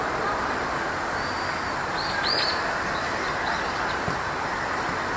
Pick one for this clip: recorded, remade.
recorded